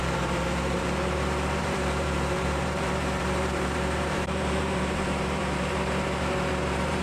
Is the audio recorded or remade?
remade